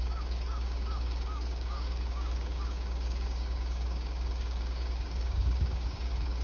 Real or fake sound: fake